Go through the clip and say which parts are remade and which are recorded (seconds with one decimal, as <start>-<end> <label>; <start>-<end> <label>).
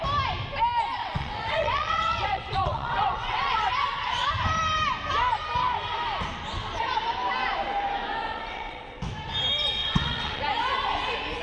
0.0-1.0 recorded; 1.0-3.7 remade; 3.7-8.3 recorded; 8.3-9.0 remade; 9.0-9.8 recorded; 9.8-10.4 remade; 10.4-11.4 recorded